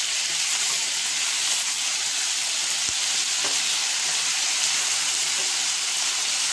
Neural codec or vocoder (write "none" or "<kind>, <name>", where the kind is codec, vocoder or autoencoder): none